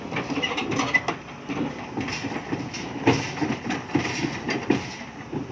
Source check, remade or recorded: recorded